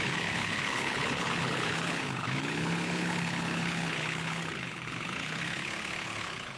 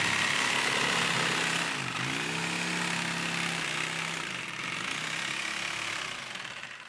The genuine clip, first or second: second